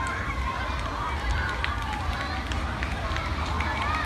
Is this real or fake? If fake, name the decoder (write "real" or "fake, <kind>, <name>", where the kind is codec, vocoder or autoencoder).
real